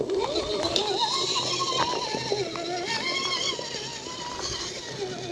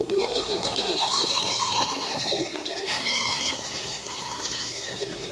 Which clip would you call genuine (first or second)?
first